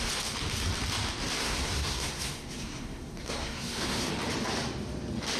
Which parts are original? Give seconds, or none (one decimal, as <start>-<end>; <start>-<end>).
0.0-1.4; 4.1-5.4